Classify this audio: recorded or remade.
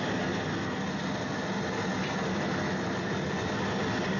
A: recorded